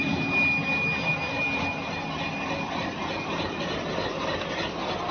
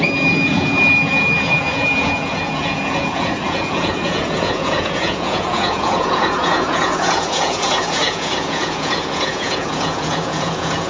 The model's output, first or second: second